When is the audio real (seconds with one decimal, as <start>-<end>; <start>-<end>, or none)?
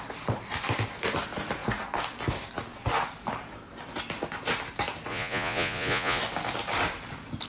0.0-5.1; 6.2-7.5